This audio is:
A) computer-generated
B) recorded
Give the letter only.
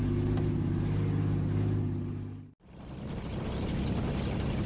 B